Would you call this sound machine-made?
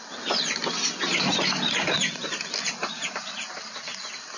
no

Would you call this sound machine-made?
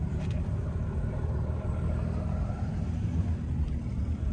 yes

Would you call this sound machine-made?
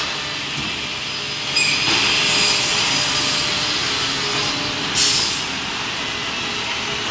no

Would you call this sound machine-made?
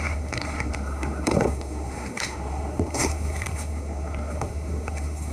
yes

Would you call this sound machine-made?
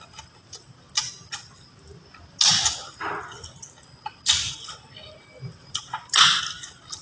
no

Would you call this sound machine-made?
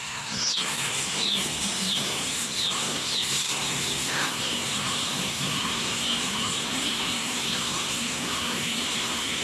yes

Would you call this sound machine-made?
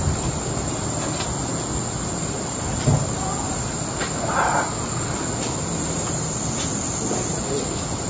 no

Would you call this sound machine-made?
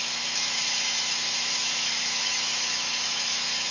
yes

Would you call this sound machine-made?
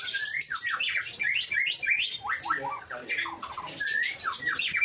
no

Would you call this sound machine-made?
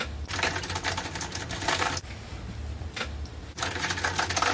no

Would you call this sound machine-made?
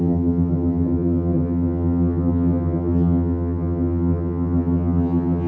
yes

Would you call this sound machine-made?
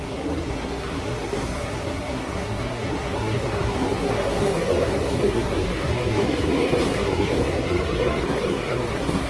yes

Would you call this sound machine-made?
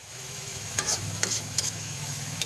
yes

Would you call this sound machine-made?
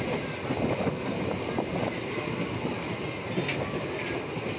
no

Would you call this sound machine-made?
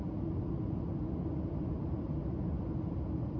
no